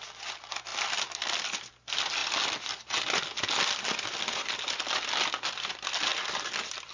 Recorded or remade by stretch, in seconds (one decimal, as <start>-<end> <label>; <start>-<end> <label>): 0.0-6.9 recorded